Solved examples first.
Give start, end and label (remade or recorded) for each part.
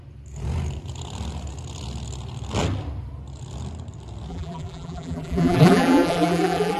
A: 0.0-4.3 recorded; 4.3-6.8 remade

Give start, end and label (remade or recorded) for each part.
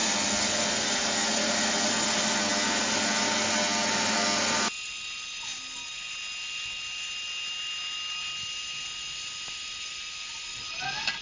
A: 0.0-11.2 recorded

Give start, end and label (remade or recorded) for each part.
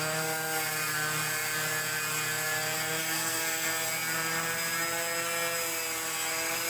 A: 0.0-3.0 recorded; 3.0-3.7 remade; 3.7-6.7 recorded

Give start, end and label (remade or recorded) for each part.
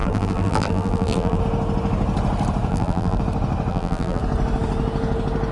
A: 0.0-1.4 remade; 1.4-2.7 recorded; 2.7-3.2 remade; 3.2-3.7 recorded; 3.7-4.2 remade; 4.2-5.5 recorded